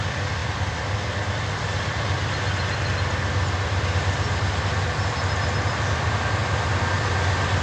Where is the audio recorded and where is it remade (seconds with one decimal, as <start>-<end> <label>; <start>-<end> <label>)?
0.0-7.6 recorded